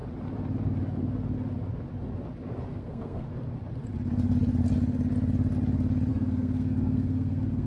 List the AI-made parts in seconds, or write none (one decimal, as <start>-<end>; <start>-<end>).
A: 2.7-3.3; 6.1-7.7